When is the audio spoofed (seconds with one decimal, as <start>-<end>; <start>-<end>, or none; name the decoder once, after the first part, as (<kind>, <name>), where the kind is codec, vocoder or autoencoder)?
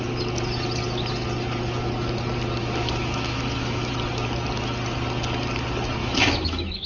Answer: 2.6-3.9 (autoencoder, DAC-VAE); 6.0-6.9